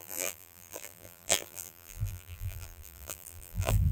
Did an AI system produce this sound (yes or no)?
yes